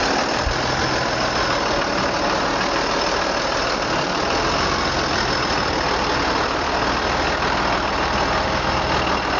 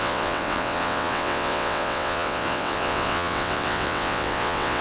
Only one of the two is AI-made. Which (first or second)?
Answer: second